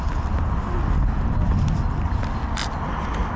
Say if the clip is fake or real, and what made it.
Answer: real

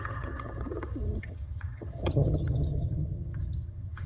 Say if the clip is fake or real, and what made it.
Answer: fake, vocoder, HiFi-GAN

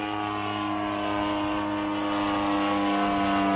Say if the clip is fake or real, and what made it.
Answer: real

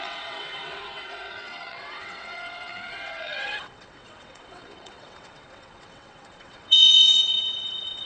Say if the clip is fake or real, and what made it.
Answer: fake, vocoder, WaveNeXt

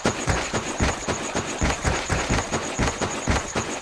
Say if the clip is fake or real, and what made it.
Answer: fake, vocoder, Vocos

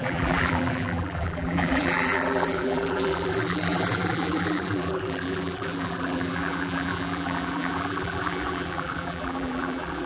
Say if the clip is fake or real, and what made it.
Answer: fake, vocoder, BigVGAN v2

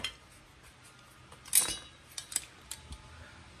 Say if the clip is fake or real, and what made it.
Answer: real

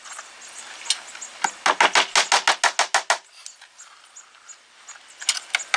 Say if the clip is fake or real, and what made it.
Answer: real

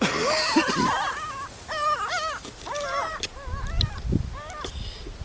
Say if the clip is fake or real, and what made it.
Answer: real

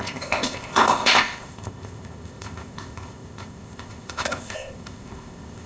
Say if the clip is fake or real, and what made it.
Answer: fake, codec, ZipCodec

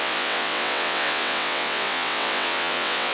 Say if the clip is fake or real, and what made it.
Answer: fake, vocoder, WaveNeXt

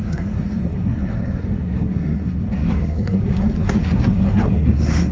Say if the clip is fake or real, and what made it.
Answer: fake, codec, SNAC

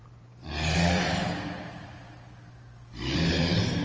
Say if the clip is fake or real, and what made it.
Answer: fake, vocoder, BigVGAN v2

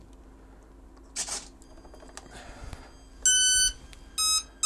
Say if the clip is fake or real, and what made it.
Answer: real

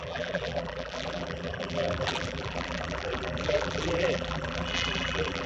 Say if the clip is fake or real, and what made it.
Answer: fake, vocoder, BigVGAN v2